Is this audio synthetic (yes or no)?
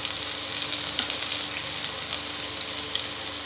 no